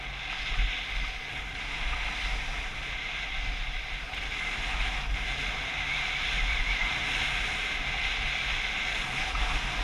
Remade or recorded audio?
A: recorded